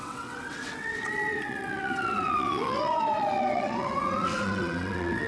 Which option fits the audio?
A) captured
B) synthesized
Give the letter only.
B